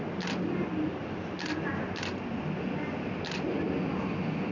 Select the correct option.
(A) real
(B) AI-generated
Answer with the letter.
A